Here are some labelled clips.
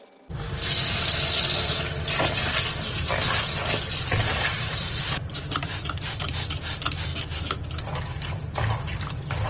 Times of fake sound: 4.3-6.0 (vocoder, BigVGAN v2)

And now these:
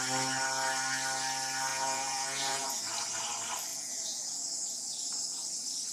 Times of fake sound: 1.7-2.8 (vocoder, Vocos); 3.7-4.7

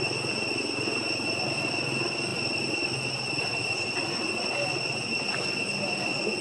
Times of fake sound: none

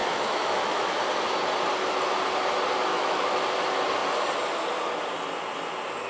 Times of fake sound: 0.0-1.0 (autoencoder, DAC-VAE); 2.9-3.4

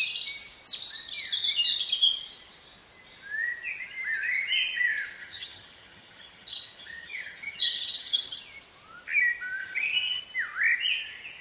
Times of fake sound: 5.2-8.4 (vocoder, HiFi-GAN); 9.6-10.2

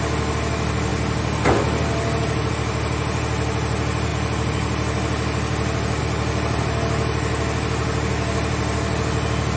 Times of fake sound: none

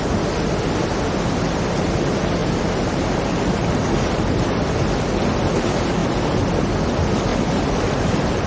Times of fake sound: 2.4-4.1 (vocoder, BigVGAN v2); 7.3-8.5

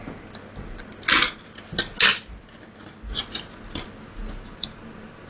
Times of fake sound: none